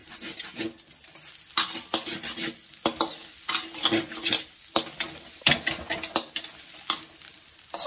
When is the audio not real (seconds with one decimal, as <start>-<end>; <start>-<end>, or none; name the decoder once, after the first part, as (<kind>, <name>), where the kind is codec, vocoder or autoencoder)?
none